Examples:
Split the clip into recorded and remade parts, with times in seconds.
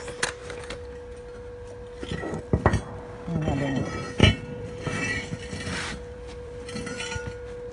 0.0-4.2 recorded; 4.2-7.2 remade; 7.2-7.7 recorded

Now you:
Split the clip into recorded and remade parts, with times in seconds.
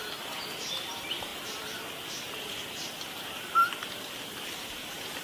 0.0-0.9 recorded; 0.9-1.3 remade; 1.3-4.1 recorded; 4.1-5.2 remade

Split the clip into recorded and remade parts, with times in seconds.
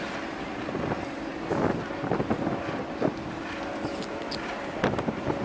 0.0-5.4 recorded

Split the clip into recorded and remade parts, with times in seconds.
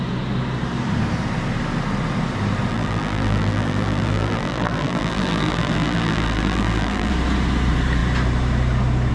0.0-2.7 recorded; 2.7-7.1 remade; 7.1-9.1 recorded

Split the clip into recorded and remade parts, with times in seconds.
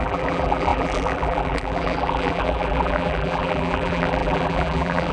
0.0-5.1 remade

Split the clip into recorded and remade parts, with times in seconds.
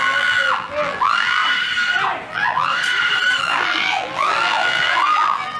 0.0-1.4 remade; 1.4-2.3 recorded; 2.3-2.7 remade; 2.7-3.4 recorded; 3.4-5.6 remade